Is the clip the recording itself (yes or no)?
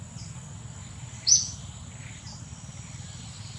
yes